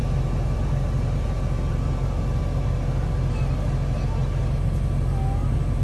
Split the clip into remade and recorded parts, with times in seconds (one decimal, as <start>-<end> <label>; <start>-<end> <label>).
0.0-5.8 recorded